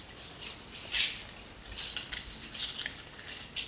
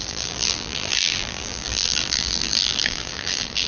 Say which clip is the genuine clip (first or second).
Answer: first